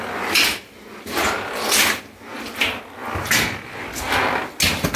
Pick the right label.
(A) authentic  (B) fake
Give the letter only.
A